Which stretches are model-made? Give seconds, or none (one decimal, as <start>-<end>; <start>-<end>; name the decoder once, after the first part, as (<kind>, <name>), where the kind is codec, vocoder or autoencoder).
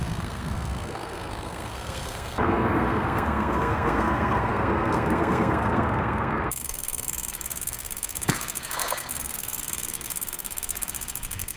0.0-11.6 (codec, SNAC)